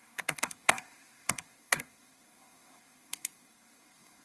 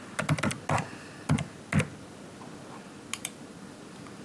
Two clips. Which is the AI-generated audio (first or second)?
first